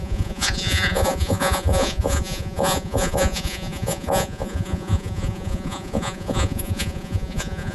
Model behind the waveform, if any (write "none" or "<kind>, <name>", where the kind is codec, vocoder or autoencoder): vocoder, Vocos